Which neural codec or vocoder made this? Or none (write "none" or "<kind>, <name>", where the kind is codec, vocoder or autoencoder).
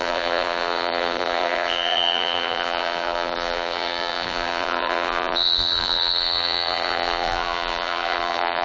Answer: vocoder, BigVGAN v2